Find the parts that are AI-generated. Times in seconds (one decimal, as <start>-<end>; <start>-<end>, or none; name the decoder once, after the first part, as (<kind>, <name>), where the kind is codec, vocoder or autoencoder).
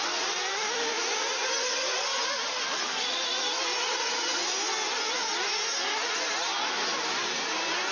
none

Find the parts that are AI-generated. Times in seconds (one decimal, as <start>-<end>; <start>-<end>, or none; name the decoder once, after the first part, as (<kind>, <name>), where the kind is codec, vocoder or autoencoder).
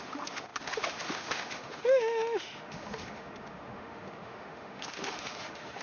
0.0-5.8 (autoencoder, DAC-VAE)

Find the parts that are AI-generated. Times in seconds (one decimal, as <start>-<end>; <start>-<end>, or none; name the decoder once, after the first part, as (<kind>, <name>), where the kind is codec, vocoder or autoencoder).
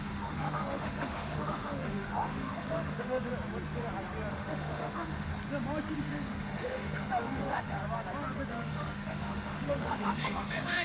0.0-3.3 (autoencoder, DAC-VAE); 4.3-5.3; 6.0-7.8; 8.5-10.8